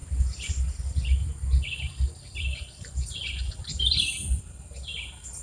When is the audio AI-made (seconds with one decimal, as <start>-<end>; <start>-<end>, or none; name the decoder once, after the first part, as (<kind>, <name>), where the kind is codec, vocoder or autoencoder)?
0.5-5.4 (vocoder, BigVGAN v2)